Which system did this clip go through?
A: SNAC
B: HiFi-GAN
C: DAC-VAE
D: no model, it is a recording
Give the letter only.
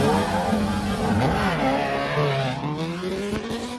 D